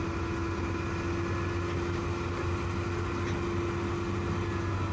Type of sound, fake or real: real